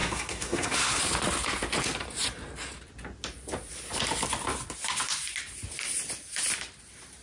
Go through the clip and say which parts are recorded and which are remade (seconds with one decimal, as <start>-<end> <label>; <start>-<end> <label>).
0.0-1.0 remade; 1.0-7.2 recorded